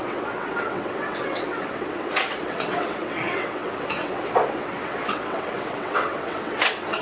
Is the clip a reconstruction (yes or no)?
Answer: yes